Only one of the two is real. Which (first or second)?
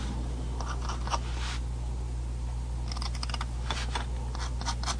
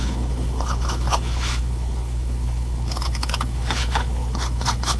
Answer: first